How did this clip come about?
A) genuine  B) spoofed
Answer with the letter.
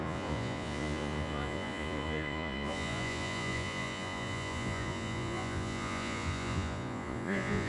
B